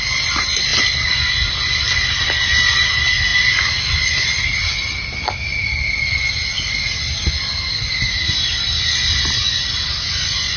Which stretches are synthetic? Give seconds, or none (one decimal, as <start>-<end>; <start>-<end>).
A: none